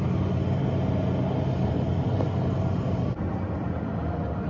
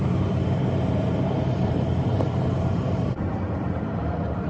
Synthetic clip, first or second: second